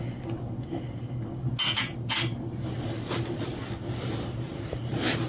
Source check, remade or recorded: recorded